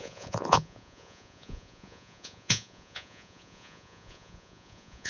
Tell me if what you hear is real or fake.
fake